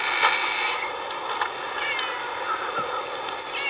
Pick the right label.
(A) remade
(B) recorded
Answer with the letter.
B